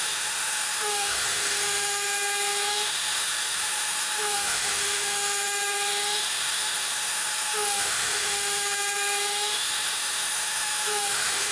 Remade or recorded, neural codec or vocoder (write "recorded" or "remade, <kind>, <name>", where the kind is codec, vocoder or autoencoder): remade, autoencoder, DAC-VAE